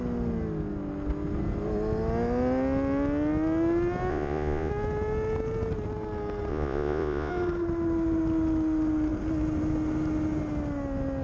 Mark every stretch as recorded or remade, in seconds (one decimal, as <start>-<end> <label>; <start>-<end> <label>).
0.0-4.1 recorded; 4.1-4.7 remade; 4.7-6.5 recorded; 6.5-7.3 remade; 7.3-11.2 recorded